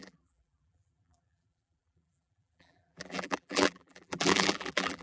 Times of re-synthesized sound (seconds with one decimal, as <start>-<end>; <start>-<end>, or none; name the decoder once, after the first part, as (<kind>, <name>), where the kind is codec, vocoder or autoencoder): 0.0-5.0 (vocoder, BigVGAN v2)